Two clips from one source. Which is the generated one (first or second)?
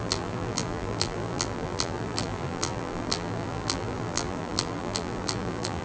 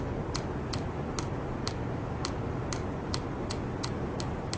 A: first